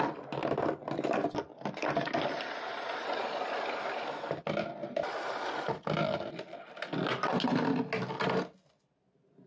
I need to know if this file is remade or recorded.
recorded